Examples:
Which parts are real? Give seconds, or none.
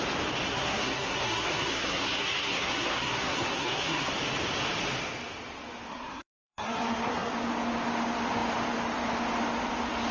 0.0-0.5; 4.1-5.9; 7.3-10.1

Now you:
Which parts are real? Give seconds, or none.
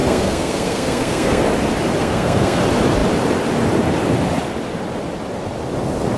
1.4-2.0; 2.6-6.2